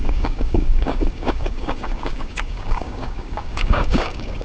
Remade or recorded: remade